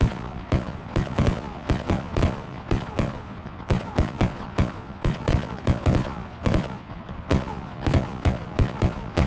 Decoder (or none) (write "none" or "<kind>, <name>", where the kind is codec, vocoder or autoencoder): vocoder, Vocos